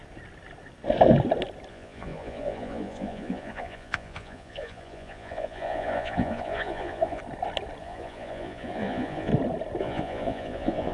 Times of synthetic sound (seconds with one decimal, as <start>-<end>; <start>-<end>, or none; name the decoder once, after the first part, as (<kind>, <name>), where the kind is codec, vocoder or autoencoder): 1.7-7.2 (vocoder, Vocos); 7.8-9.3; 9.8-10.9